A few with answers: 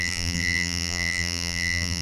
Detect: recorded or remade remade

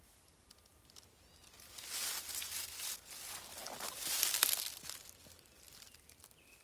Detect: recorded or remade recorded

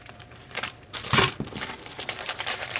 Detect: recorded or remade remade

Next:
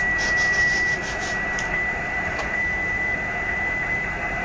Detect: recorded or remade remade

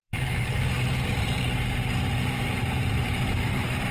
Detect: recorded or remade remade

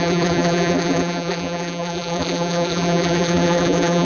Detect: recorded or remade remade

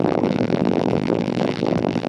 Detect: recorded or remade remade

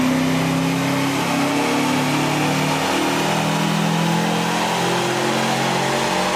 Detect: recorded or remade recorded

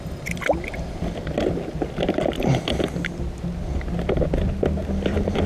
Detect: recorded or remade recorded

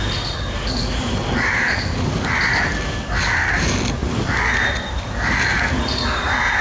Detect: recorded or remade recorded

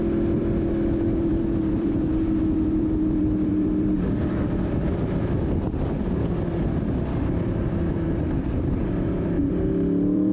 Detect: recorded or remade remade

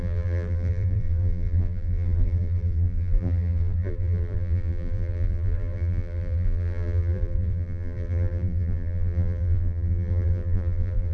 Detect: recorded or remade remade